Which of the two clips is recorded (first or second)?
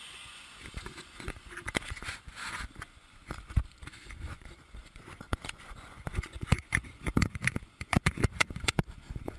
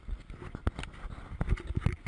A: second